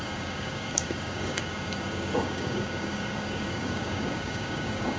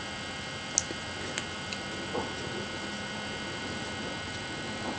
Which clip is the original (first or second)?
second